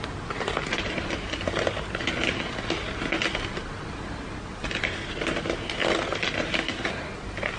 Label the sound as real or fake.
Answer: real